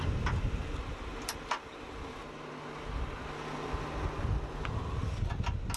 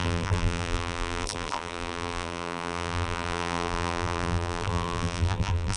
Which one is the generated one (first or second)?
second